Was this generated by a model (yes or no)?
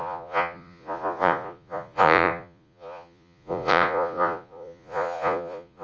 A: yes